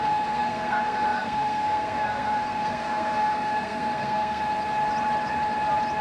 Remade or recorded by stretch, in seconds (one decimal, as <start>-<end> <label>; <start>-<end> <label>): 0.0-4.4 remade; 4.4-6.0 recorded